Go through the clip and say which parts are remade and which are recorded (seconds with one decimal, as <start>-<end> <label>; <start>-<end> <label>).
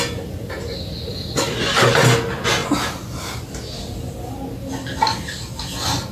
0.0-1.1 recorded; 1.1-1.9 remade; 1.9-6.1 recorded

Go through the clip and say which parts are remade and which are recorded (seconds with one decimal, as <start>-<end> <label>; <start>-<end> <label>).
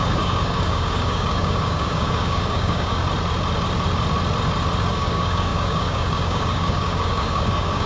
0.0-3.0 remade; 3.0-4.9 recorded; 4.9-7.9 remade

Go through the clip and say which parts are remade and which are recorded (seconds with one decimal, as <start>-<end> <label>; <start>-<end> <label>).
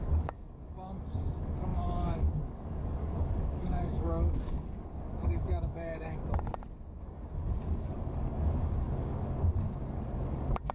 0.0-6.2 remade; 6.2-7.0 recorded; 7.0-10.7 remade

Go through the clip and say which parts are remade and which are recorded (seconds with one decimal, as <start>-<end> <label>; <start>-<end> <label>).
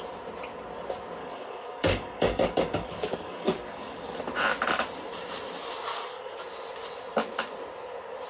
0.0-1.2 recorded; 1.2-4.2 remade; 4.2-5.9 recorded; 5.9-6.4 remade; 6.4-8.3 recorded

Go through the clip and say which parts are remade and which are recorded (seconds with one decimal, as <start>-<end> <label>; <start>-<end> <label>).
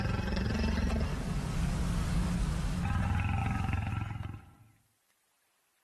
0.0-1.1 recorded; 1.1-2.8 remade; 2.8-3.4 recorded; 3.4-3.9 remade; 3.9-5.8 recorded